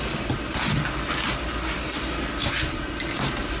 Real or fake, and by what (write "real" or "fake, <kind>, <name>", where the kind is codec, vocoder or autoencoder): real